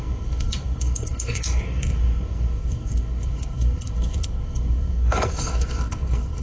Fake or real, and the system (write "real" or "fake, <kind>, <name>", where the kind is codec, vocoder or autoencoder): fake, codec, SNAC